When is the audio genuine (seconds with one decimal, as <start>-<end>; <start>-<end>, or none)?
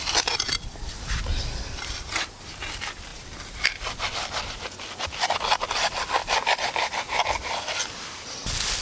0.0-8.8